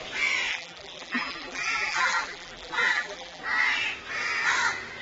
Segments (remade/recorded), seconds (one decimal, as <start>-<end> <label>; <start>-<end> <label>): 0.0-0.5 recorded; 0.5-3.4 remade; 3.4-5.0 recorded